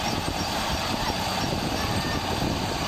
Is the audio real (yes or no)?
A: no